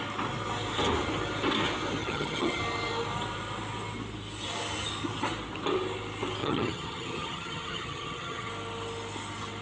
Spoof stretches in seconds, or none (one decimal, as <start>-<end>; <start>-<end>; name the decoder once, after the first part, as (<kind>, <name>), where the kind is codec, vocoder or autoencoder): 2.0-2.6 (vocoder, HiFi-GAN); 6.4-8.5